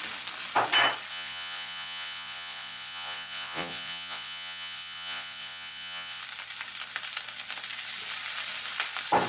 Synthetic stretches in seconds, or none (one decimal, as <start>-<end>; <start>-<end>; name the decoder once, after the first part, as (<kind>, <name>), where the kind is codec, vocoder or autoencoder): 1.1-6.2 (vocoder, Vocos)